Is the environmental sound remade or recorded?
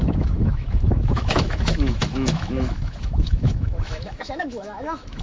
remade